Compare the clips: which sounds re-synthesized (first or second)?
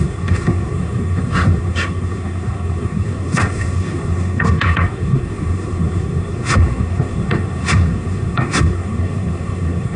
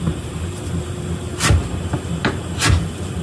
first